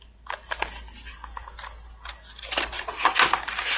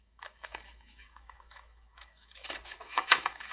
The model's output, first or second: second